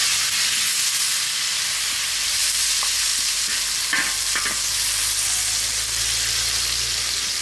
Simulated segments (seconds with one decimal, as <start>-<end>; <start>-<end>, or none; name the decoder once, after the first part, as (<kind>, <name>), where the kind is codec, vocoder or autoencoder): 1.6-3.1 (vocoder, BigVGAN v2); 6.0-7.4